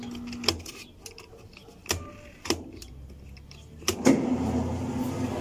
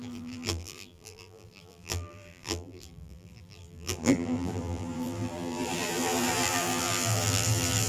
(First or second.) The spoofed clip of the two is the second